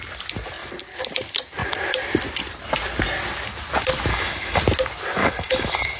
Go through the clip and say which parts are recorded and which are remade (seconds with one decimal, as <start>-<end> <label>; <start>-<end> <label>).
0.0-4.1 recorded; 4.1-4.6 remade; 4.6-5.2 recorded; 5.2-6.0 remade

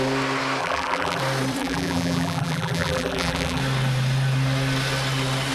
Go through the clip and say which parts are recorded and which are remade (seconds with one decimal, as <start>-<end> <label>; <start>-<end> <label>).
0.0-0.6 recorded; 0.6-1.2 remade; 1.2-1.6 recorded; 1.6-3.6 remade; 3.6-5.5 recorded

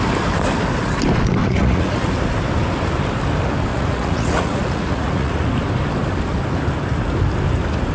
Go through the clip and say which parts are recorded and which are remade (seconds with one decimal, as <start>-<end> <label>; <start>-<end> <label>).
0.0-1.4 recorded; 1.4-2.1 remade; 2.1-3.7 recorded; 3.7-5.4 remade; 5.4-7.9 recorded

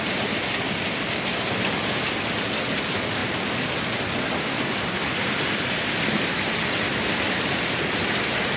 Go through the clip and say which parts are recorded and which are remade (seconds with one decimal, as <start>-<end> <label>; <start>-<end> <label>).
0.0-8.6 recorded

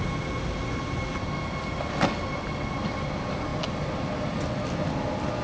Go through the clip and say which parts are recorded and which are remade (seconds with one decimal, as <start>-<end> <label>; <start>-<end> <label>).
0.0-5.4 recorded

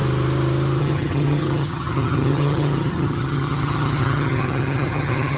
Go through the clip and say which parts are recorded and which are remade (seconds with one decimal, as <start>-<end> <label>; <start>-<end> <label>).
0.0-0.8 recorded; 0.8-5.4 remade

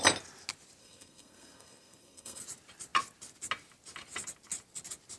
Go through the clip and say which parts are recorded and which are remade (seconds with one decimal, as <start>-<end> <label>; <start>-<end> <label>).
0.0-0.8 recorded; 0.8-2.4 remade; 2.4-5.2 recorded

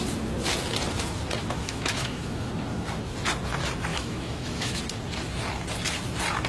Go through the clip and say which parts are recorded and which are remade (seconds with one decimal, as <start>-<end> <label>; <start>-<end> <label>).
0.0-1.4 recorded; 1.4-2.5 remade; 2.5-3.9 recorded; 3.9-4.8 remade; 4.8-6.5 recorded